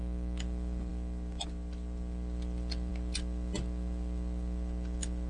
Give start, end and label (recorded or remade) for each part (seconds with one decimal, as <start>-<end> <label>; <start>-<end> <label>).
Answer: 0.0-5.3 recorded